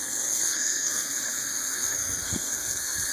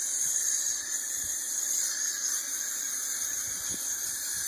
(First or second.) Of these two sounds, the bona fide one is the second